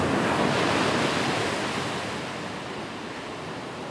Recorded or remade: recorded